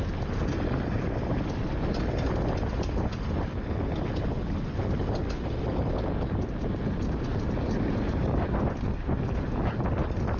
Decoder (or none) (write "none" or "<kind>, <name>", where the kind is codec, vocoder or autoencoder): none